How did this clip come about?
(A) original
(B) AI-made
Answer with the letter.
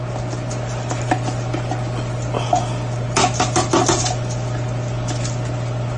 A